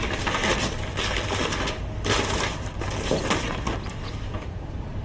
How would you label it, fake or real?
real